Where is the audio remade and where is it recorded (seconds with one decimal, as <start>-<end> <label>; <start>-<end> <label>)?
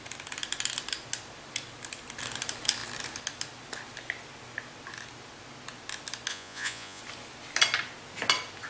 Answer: 0.0-6.3 recorded; 6.3-7.0 remade; 7.0-8.7 recorded